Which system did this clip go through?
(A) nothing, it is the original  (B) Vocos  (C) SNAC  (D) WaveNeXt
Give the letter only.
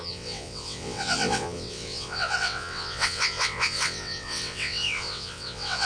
D